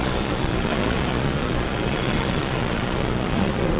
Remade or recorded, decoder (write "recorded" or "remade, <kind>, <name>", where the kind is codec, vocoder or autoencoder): remade, vocoder, Vocos